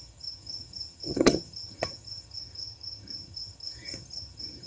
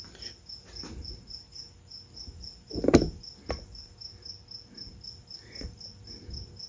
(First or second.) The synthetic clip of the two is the first